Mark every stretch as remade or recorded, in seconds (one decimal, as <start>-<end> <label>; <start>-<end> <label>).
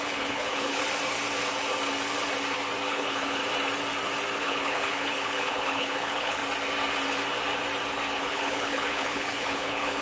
0.0-0.8 remade; 0.8-2.9 recorded; 2.9-3.4 remade; 3.4-4.4 recorded; 4.4-6.4 remade; 6.4-8.2 recorded; 8.2-10.0 remade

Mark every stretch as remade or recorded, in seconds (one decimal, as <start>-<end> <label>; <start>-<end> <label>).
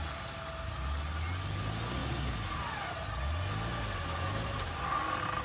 0.0-5.4 recorded